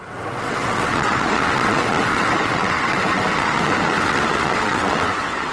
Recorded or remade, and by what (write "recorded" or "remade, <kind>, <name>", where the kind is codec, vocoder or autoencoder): remade, vocoder, WaveNeXt